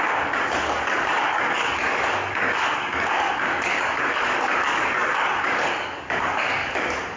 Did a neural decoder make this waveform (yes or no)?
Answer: yes